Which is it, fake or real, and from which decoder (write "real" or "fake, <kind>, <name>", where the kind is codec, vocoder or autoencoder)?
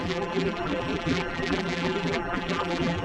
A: fake, vocoder, BigVGAN v2